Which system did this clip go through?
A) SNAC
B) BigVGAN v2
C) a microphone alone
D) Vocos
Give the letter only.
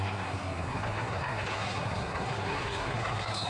A